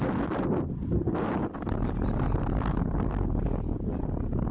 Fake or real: real